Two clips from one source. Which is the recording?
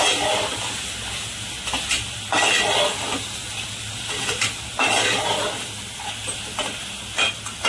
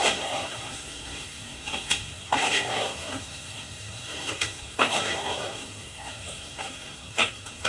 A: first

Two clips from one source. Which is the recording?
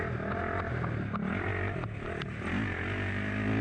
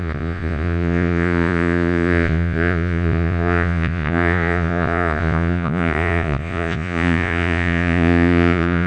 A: first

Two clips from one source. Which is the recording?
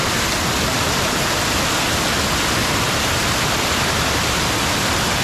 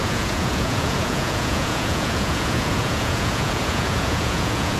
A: first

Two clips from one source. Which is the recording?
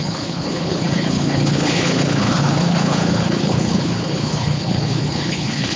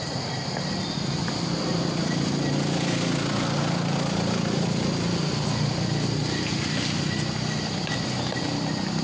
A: second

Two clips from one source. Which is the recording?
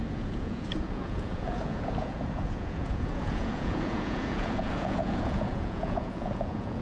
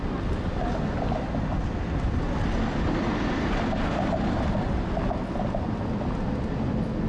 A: second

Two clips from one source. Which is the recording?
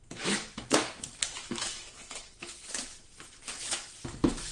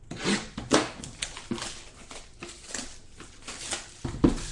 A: second